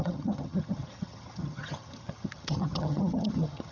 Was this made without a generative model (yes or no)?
no